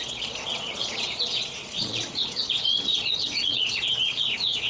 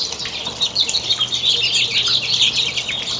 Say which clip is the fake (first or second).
first